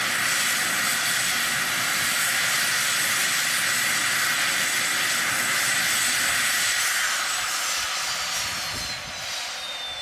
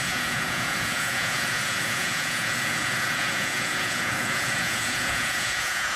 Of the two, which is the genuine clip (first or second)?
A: first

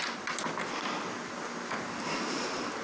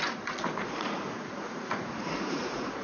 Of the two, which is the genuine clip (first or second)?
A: first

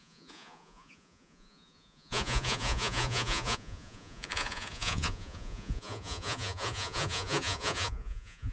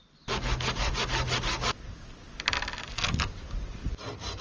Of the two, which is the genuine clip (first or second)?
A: second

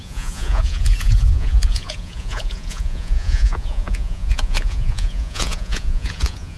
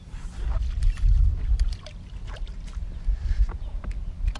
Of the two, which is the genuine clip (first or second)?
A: second